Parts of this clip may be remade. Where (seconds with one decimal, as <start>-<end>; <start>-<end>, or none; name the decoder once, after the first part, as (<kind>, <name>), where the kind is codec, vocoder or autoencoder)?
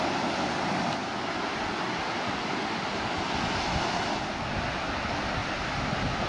none